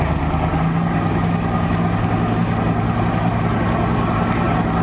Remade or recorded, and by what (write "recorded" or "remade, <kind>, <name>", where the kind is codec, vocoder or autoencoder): recorded